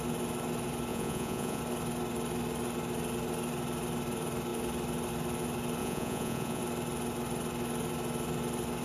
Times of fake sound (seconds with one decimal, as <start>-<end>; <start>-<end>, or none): 0.9-1.6; 5.8-6.6